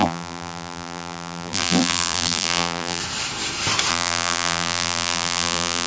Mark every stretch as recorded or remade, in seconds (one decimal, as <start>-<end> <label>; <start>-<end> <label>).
0.0-3.0 remade; 3.0-3.9 recorded; 3.9-5.9 remade